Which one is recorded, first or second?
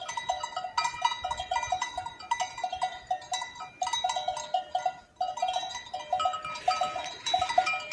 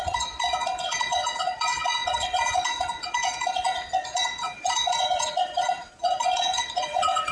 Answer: first